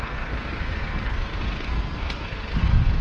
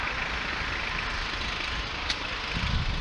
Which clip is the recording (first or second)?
second